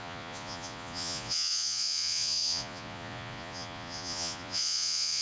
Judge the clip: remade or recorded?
remade